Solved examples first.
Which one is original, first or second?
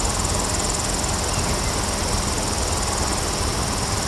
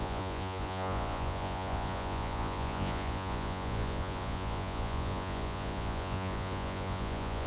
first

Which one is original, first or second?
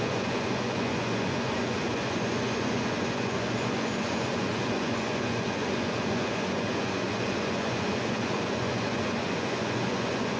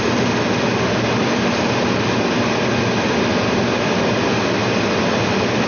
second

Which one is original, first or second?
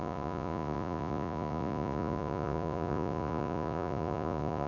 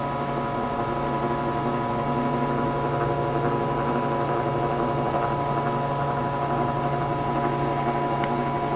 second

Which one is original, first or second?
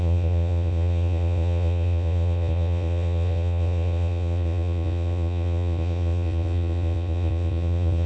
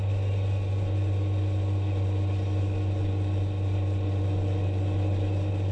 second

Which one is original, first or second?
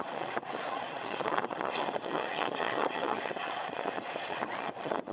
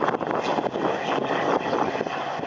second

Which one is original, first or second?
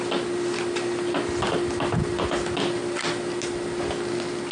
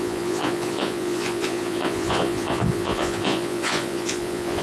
first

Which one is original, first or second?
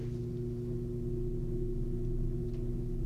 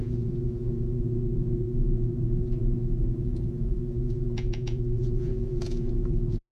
first